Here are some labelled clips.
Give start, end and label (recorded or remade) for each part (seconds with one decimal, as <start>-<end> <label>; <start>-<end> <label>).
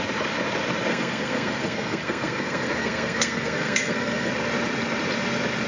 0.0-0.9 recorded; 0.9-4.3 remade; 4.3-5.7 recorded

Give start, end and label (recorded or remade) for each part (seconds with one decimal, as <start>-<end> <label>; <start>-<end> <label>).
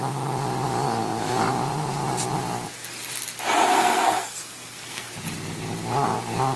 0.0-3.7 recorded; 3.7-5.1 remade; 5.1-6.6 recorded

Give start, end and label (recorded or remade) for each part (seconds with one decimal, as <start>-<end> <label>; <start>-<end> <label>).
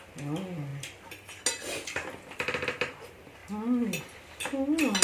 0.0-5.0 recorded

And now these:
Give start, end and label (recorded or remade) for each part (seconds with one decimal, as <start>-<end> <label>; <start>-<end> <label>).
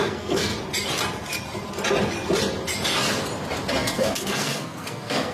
0.0-0.5 remade; 0.5-3.7 recorded; 3.7-5.3 remade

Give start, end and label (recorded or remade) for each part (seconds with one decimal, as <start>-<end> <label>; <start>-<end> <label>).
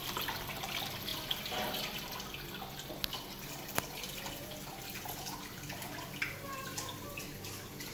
0.0-7.9 recorded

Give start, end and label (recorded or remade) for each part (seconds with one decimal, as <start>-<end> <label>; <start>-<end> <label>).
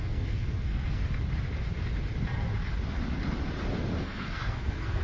0.0-1.0 remade; 1.0-4.0 recorded; 4.0-5.0 remade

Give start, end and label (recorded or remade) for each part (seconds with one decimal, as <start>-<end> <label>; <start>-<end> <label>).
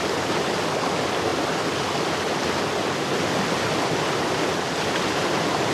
0.0-5.7 recorded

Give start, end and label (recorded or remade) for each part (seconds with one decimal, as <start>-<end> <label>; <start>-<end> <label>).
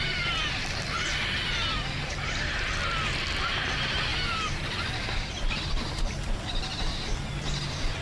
0.0-8.0 recorded